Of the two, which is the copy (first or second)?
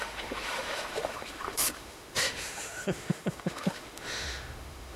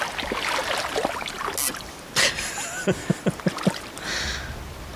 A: first